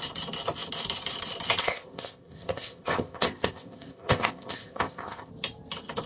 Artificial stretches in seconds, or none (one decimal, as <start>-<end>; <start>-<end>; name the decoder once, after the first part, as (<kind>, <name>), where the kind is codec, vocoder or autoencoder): 1.6-5.3 (codec, ZipCodec)